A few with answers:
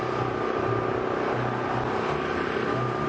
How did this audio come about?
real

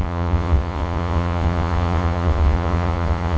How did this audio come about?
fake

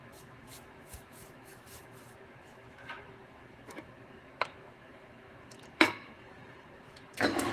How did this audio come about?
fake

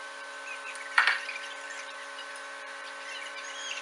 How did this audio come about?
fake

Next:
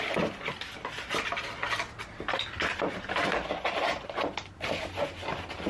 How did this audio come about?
real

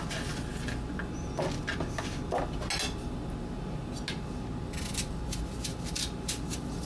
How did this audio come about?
real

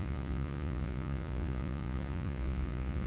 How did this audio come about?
fake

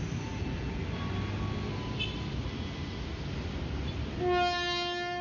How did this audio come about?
real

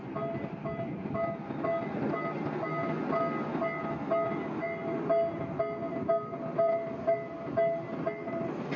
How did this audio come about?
real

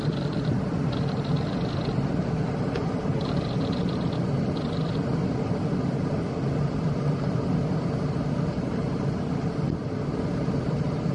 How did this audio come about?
fake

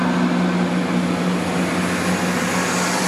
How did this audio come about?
real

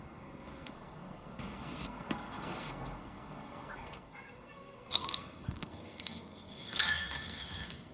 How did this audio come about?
fake